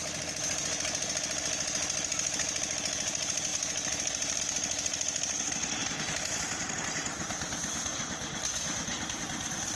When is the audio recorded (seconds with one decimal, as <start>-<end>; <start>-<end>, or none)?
0.0-3.5; 4.4-5.8; 6.4-7.9; 9.2-9.8